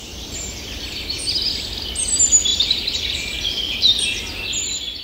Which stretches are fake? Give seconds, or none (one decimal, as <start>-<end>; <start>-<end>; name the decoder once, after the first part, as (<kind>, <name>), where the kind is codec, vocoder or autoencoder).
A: 2.5-3.4 (vocoder, BigVGAN v2)